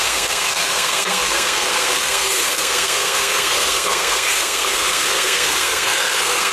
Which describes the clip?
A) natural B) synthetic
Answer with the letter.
B